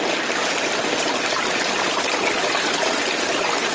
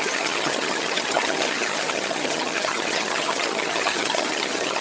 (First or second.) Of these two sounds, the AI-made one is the second